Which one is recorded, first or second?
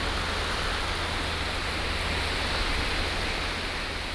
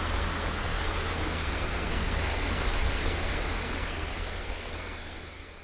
first